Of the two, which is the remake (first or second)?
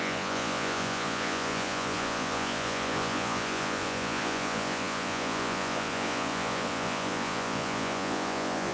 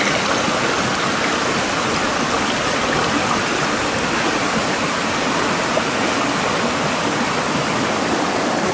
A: first